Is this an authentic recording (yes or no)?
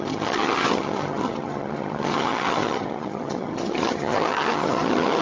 no